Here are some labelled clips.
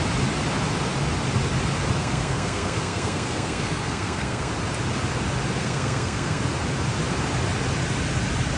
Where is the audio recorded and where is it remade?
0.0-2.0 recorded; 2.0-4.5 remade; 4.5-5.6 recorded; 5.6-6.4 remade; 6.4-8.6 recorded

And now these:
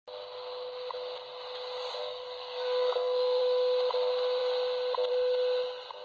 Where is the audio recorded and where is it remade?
0.0-2.0 recorded; 2.0-3.4 remade; 3.4-6.0 recorded

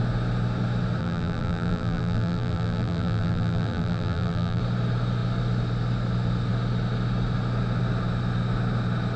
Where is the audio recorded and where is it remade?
0.0-1.0 recorded; 1.0-4.6 remade; 4.6-9.2 recorded

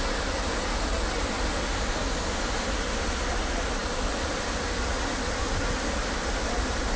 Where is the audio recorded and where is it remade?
0.0-7.0 recorded

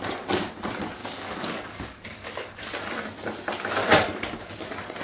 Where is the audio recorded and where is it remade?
0.0-1.0 recorded; 1.0-2.7 remade; 2.7-3.8 recorded; 3.8-4.6 remade; 4.6-5.0 recorded